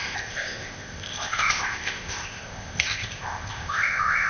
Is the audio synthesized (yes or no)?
yes